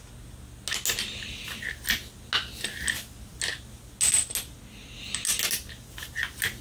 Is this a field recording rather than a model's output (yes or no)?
yes